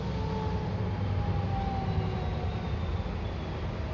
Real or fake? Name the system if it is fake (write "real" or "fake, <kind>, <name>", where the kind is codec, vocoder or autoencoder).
real